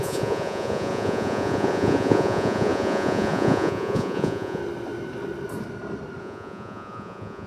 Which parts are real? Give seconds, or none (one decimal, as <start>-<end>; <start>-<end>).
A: 4.6-6.2